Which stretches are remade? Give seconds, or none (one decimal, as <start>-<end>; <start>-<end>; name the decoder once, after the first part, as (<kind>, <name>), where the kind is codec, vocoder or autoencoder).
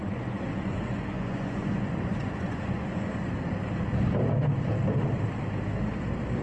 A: 0.0-3.2 (vocoder, Vocos)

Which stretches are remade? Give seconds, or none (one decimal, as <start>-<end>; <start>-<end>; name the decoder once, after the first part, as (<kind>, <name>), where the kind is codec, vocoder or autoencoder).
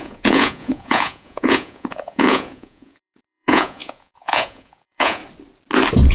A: 0.0-5.2 (vocoder, Vocos)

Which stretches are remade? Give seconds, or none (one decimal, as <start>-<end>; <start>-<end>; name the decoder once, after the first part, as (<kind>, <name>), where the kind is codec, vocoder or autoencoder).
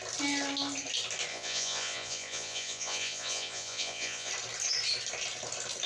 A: 1.3-4.3 (vocoder, Vocos)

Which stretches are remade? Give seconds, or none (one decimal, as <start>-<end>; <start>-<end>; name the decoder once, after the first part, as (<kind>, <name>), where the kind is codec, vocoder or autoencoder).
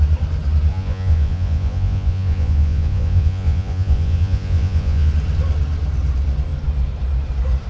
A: 0.7-5.1 (vocoder, Vocos)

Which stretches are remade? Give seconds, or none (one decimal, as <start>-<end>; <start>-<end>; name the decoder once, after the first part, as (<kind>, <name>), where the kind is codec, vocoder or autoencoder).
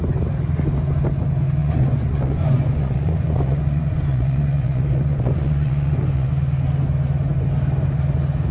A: 1.6-6.3 (vocoder, Vocos)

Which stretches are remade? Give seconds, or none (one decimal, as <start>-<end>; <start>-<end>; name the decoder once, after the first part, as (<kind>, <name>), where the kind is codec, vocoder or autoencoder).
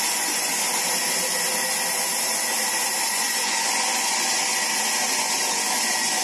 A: 0.0-0.5 (vocoder, Vocos); 3.1-4.5; 5.2-6.2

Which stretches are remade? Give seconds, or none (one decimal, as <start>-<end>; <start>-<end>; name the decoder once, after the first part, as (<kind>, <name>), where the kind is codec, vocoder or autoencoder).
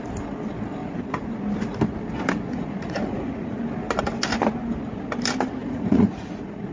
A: 0.8-1.3 (vocoder, Vocos); 2.5-3.6; 5.6-6.7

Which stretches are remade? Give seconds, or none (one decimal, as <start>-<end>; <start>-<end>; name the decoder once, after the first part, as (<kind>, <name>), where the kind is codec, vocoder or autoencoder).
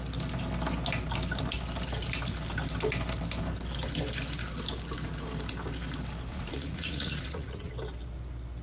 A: 6.3-7.7 (vocoder, Vocos)